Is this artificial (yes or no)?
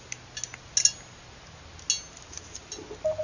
no